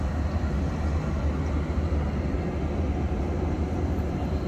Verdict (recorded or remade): recorded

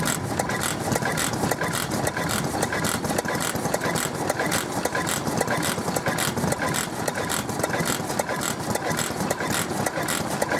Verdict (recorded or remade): recorded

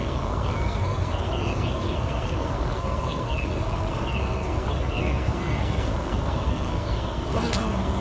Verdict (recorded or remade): remade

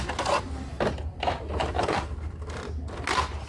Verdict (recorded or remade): recorded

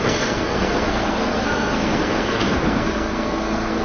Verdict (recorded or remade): remade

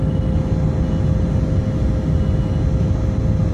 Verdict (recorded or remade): recorded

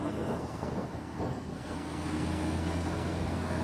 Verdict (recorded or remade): remade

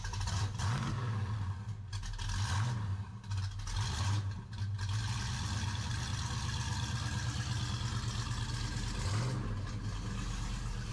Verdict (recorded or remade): recorded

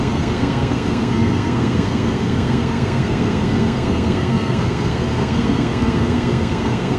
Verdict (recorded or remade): remade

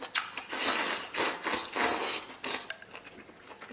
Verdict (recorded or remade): recorded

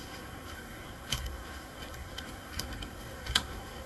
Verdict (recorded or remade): remade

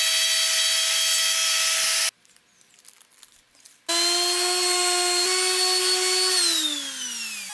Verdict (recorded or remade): recorded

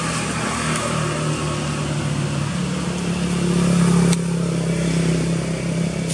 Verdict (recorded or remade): recorded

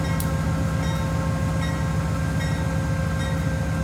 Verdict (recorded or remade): recorded